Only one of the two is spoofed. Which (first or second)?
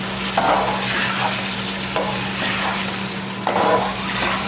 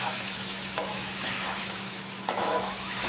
second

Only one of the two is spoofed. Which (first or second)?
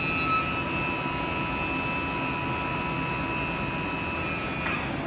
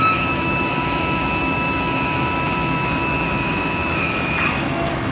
second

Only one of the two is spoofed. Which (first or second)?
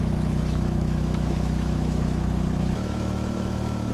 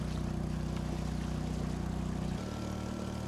first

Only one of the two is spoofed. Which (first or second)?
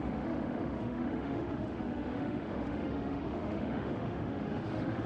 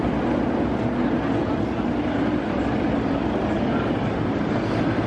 first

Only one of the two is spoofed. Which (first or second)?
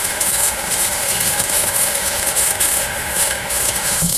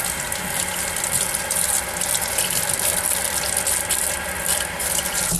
first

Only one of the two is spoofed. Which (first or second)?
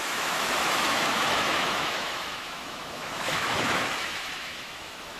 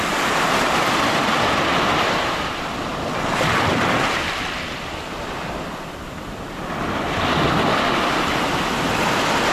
first